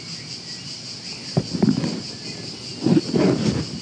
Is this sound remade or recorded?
recorded